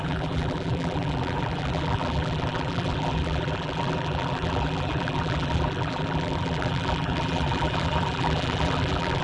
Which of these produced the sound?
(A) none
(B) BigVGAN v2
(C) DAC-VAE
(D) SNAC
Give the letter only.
B